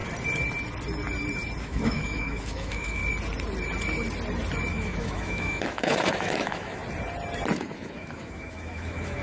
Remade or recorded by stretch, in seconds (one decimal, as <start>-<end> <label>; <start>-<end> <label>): 0.0-1.6 recorded; 1.6-3.0 remade; 3.0-4.7 recorded; 4.7-6.8 remade; 6.8-7.6 recorded; 7.6-9.2 remade